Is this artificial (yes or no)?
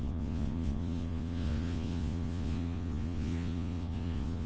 yes